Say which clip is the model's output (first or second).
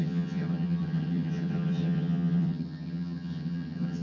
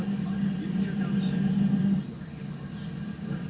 first